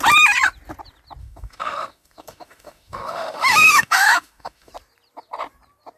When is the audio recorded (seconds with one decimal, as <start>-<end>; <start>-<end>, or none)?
0.0-1.2; 4.7-6.0